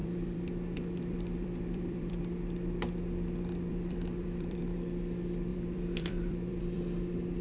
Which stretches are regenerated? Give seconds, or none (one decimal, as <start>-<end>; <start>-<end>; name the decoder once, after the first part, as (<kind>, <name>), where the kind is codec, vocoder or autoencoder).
0.0-2.2 (vocoder, BigVGAN v2); 3.7-4.6; 5.5-6.8